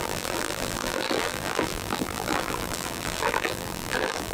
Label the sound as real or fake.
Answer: fake